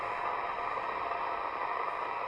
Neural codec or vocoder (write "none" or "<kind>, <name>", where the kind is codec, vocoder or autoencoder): none